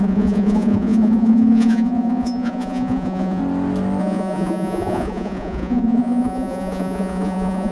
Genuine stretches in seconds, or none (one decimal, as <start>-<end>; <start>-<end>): 3.4-4.0